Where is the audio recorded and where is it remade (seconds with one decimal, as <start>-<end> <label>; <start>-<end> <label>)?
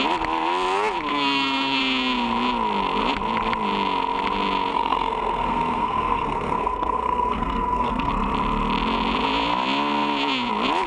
0.0-1.1 recorded; 1.1-1.8 remade; 1.8-4.7 recorded; 4.7-8.1 remade; 8.1-10.9 recorded